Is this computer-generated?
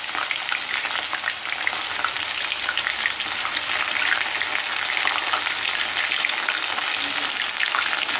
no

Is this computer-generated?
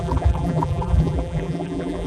yes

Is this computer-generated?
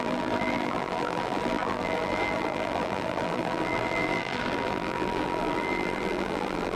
yes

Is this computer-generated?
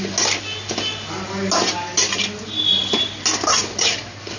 no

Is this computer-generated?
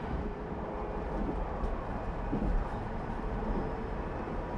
yes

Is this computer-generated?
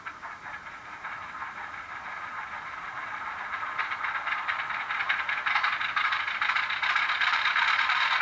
yes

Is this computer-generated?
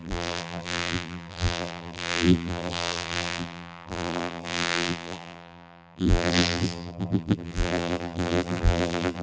yes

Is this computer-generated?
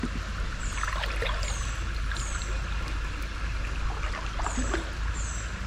no